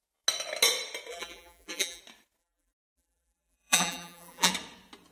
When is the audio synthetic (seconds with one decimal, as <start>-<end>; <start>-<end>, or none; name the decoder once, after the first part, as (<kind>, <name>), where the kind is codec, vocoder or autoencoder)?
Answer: 1.1-2.0 (vocoder, BigVGAN v2); 2.4-4.5